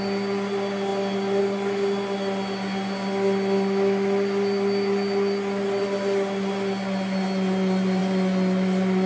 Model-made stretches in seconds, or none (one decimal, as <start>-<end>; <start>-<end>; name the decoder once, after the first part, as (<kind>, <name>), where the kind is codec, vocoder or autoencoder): none